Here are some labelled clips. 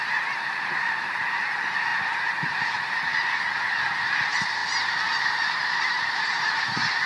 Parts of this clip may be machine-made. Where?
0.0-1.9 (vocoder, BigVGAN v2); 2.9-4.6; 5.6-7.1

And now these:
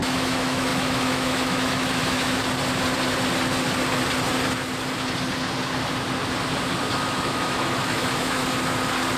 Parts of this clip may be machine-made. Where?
0.0-2.4 (autoencoder, DAC-VAE); 6.9-8.4

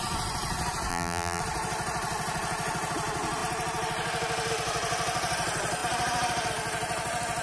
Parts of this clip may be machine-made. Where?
0.9-1.4 (vocoder, BigVGAN v2)

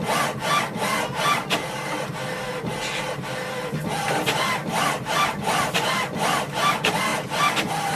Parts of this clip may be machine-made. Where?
4.6-6.5 (vocoder, BigVGAN v2)

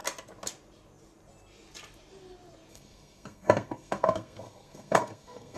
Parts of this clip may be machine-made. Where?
2.7-5.6 (codec, SNAC)

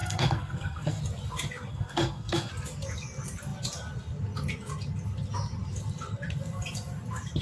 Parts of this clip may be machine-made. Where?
0.0-1.0 (codec, SNAC); 1.7-2.5

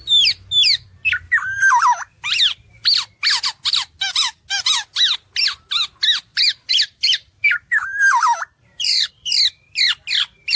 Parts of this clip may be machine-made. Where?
1.6-2.4 (vocoder, BigVGAN v2); 6.3-9.1

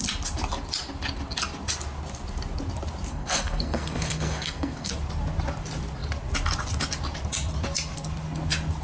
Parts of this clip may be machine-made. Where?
3.1-4.9 (codec, SNAC)